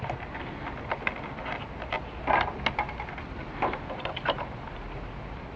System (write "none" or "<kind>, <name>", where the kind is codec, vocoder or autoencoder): none